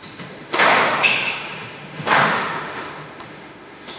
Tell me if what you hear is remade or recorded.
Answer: remade